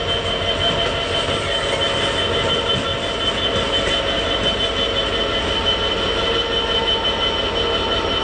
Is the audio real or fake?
real